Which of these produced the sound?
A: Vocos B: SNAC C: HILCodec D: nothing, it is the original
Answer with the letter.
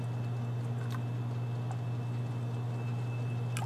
D